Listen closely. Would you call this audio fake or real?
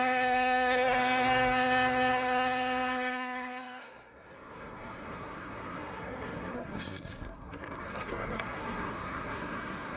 fake